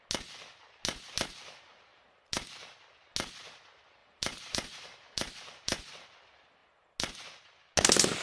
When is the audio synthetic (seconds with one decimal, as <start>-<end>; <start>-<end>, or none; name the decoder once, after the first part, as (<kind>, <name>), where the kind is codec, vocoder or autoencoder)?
1.9-2.4 (vocoder, BigVGAN v2); 4.0-5.9